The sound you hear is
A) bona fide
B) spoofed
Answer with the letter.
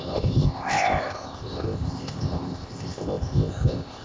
B